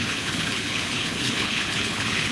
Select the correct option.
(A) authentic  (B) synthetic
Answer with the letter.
B